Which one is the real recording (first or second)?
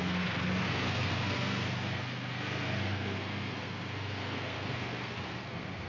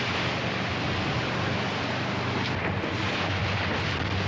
second